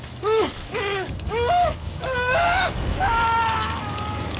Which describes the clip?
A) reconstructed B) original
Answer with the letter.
A